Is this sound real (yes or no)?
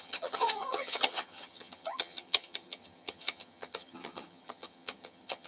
no